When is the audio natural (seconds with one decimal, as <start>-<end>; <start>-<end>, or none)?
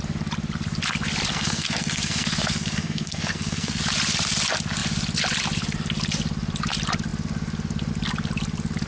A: 0.0-1.3; 3.8-8.9